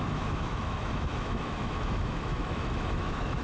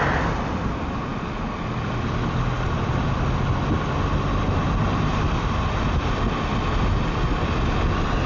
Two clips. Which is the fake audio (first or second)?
first